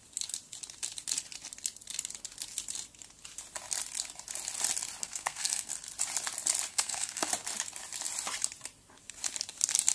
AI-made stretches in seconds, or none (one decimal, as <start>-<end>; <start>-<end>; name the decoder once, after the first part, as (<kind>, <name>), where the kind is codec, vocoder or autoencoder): 5.0-5.7 (codec, SNAC); 6.7-7.3